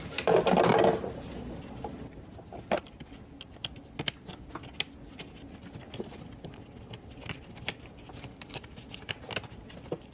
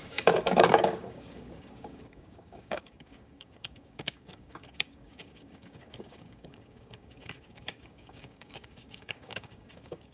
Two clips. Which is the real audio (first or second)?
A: first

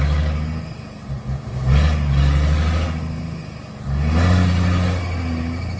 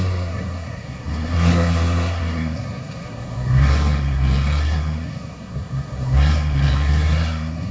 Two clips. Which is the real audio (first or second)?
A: first